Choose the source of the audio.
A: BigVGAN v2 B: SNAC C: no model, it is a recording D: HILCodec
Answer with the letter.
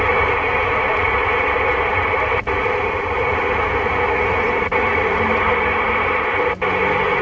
C